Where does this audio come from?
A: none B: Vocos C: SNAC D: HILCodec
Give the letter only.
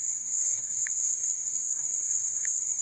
C